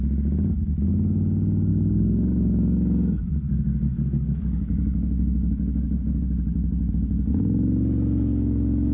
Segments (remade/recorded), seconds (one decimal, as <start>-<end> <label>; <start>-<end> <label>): 0.0-1.7 recorded; 1.7-6.9 remade; 6.9-8.9 recorded